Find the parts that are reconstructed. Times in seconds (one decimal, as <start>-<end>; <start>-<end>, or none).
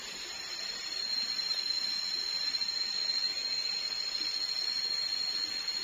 none